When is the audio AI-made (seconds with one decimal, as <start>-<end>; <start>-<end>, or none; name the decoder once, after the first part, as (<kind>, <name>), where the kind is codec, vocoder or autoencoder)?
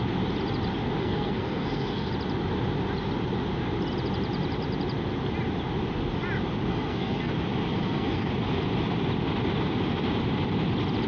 1.0-2.1 (codec, SNAC); 6.7-7.3; 7.7-8.3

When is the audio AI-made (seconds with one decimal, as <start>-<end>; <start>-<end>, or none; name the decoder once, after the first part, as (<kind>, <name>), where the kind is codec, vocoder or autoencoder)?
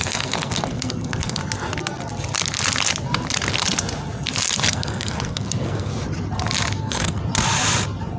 0.0-1.4 (codec, SNAC); 4.7-5.9; 6.8-7.2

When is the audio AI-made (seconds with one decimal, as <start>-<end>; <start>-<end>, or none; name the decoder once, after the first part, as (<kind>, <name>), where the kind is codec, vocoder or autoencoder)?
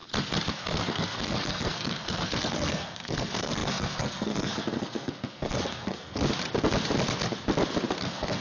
0.5-6.2 (codec, SNAC); 8.0-8.4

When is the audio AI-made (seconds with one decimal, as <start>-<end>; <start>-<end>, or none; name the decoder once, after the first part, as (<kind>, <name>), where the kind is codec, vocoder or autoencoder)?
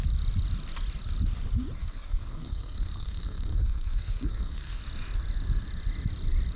1.8-4.8 (codec, SNAC)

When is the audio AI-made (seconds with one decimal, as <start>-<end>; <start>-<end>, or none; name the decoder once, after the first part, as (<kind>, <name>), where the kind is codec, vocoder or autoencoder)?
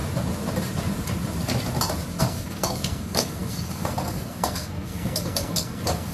2.2-6.1 (codec, SNAC)